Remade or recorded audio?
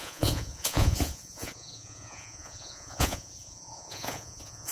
remade